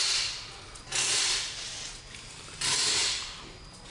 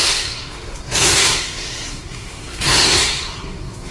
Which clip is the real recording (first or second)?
first